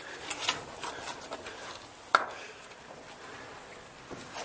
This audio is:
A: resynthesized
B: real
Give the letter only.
B